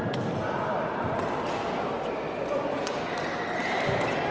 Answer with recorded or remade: recorded